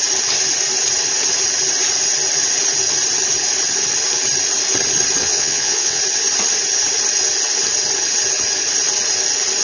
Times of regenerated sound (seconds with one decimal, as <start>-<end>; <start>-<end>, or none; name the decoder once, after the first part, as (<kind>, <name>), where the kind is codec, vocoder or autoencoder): 5.2-6.0 (vocoder, WaveNeXt)